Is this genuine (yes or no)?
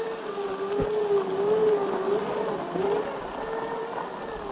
yes